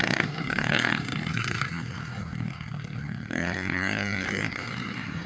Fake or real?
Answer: fake